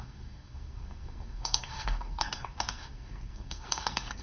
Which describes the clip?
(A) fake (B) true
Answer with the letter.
A